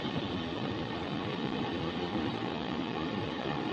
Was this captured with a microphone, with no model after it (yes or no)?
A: no